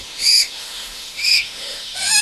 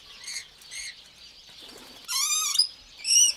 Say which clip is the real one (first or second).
second